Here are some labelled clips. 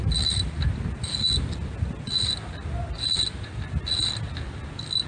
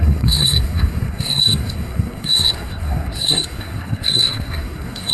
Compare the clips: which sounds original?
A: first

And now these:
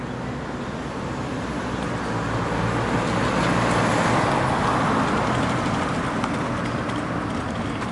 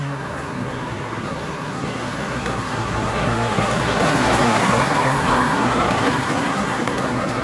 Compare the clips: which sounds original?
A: first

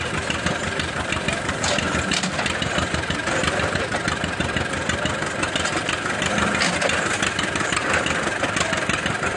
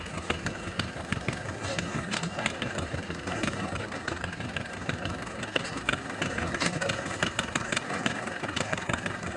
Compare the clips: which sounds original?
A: first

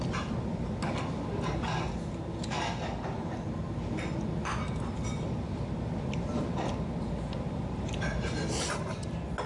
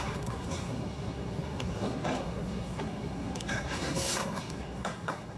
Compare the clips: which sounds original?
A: first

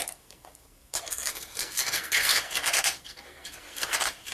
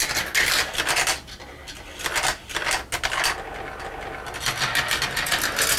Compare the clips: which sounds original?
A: second